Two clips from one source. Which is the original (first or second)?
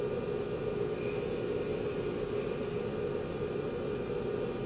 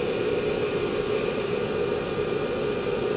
first